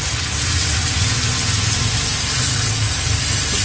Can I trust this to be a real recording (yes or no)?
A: yes